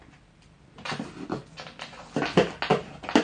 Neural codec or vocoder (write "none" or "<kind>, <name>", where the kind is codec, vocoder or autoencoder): none